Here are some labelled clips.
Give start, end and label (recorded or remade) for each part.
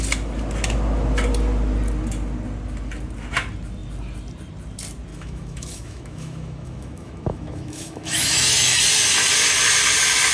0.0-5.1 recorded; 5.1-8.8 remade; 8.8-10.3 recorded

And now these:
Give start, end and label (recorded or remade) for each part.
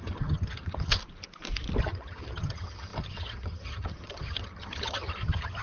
0.0-1.0 remade; 1.0-1.8 recorded; 1.8-5.6 remade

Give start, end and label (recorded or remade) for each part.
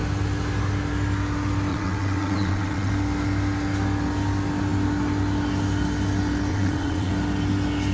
0.0-1.7 recorded; 1.7-2.9 remade; 2.9-6.5 recorded; 6.5-7.1 remade; 7.1-7.9 recorded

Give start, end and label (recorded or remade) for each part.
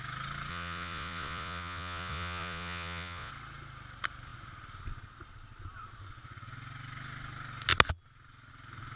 0.0-0.5 recorded; 0.5-3.3 remade; 3.3-9.0 recorded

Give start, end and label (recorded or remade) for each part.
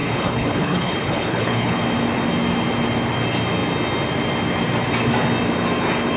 0.0-1.8 remade; 1.8-6.2 recorded